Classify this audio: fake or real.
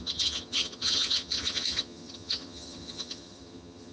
fake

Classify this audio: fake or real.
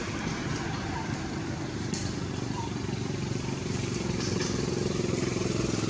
fake